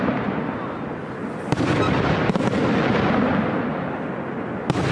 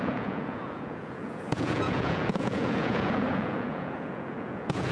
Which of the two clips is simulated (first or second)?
second